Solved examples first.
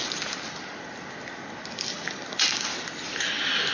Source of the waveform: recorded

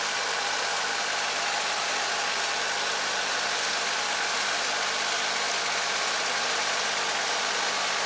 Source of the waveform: recorded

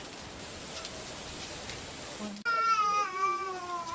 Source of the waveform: recorded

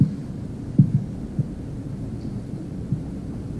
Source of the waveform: remade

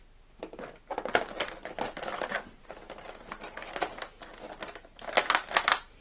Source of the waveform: recorded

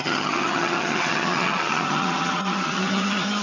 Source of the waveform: remade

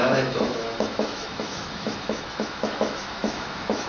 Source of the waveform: remade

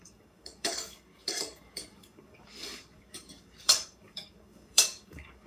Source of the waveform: remade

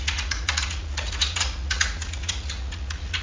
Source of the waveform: remade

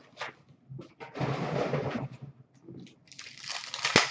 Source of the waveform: recorded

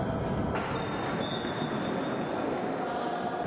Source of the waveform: recorded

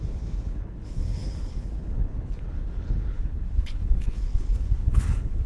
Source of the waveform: remade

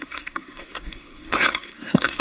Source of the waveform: remade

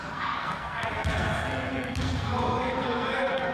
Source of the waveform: remade